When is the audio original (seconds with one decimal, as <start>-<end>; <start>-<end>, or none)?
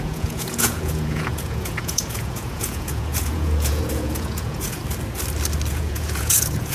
4.8-5.7